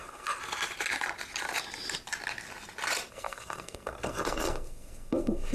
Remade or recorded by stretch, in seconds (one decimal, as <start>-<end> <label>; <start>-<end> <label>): 0.0-0.4 remade; 0.4-3.1 recorded; 3.1-5.5 remade